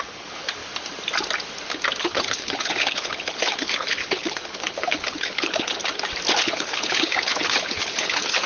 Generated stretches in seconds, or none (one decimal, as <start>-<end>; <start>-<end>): 0.0-0.6; 2.0-5.8; 6.4-8.5